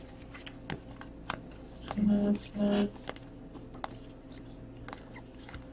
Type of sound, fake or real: real